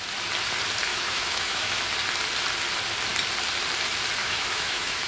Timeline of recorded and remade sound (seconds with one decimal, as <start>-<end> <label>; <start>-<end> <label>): 0.0-0.9 recorded; 0.9-1.8 remade; 1.8-4.2 recorded; 4.2-5.1 remade